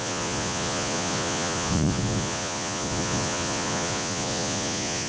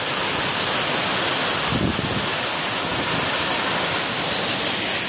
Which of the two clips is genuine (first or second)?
second